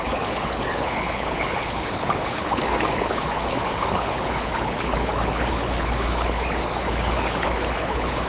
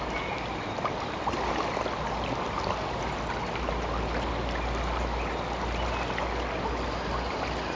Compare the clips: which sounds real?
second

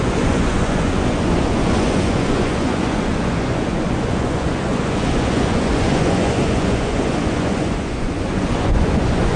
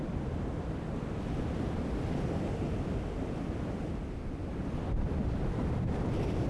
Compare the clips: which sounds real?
second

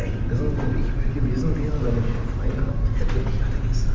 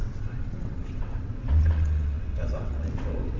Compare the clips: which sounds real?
first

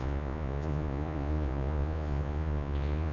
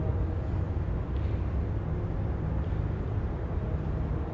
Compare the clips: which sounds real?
second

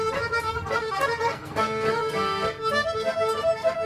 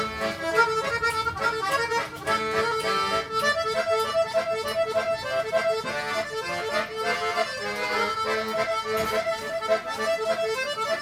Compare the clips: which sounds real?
second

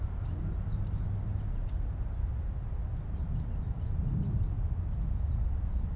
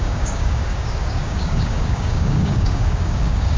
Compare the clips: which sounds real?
first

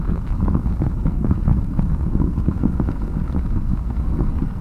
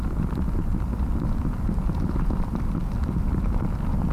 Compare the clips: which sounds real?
second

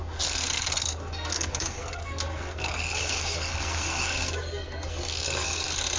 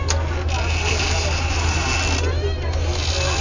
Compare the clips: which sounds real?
second